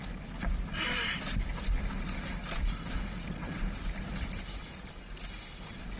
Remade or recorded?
recorded